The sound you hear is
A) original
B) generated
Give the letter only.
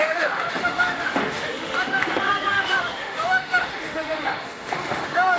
B